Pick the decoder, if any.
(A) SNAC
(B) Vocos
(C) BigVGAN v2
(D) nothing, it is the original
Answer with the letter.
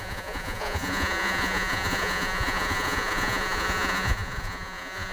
B